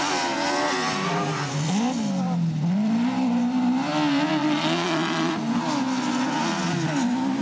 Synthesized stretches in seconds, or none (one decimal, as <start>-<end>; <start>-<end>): 4.4-5.3